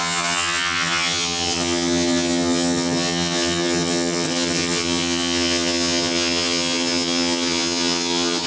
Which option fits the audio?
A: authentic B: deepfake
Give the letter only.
B